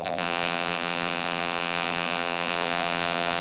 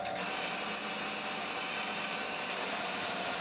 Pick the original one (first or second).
second